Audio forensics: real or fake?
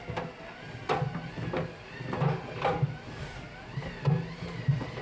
real